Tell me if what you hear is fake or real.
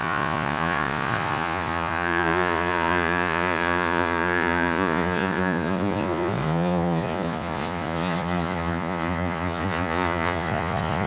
fake